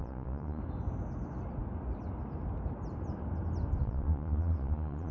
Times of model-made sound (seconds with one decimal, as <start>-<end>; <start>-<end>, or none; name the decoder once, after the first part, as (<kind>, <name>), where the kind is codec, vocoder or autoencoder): 0.0-0.6 (vocoder, Vocos); 3.8-5.1